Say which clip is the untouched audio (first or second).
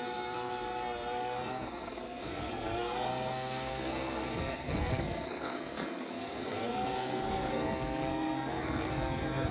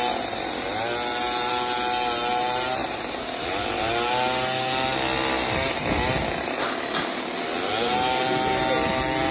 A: second